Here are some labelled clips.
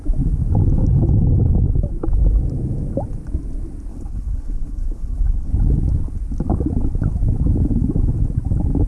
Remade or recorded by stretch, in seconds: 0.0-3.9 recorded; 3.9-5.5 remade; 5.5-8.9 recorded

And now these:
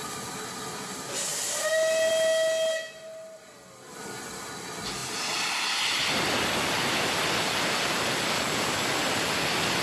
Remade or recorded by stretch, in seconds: 0.0-9.8 recorded

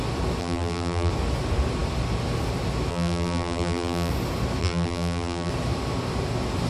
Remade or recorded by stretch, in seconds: 0.0-0.4 recorded; 0.4-1.1 remade; 1.1-2.9 recorded; 2.9-4.1 remade; 4.1-4.6 recorded; 4.6-5.5 remade; 5.5-6.7 recorded

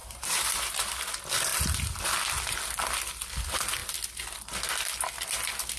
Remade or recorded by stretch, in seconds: 0.0-0.9 remade; 0.9-5.8 recorded

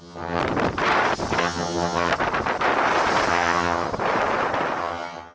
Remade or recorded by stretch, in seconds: 0.0-0.4 remade; 0.4-1.4 recorded; 1.4-2.1 remade; 2.1-3.3 recorded; 3.3-3.9 remade; 3.9-4.8 recorded; 4.8-5.3 remade

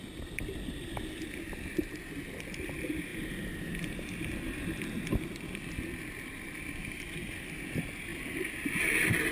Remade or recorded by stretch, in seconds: 0.0-9.3 recorded